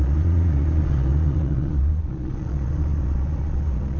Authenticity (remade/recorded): remade